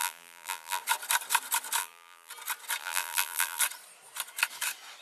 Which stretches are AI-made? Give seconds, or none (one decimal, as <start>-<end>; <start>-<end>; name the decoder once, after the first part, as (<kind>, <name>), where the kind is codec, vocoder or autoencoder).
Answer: 0.0-0.8 (vocoder, BigVGAN v2); 1.8-2.3; 2.8-3.6